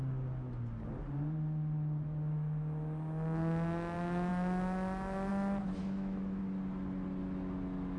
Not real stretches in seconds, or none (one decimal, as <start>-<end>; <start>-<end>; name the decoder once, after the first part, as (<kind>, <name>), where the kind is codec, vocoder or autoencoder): 5.8-6.4 (autoencoder, DAC-VAE)